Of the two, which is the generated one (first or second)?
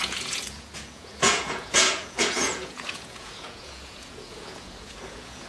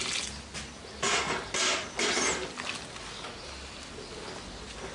first